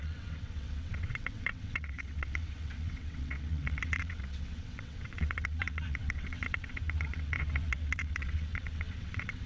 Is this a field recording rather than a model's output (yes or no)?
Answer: no